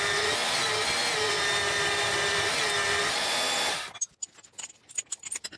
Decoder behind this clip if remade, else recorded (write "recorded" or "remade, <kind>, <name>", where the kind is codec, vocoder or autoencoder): recorded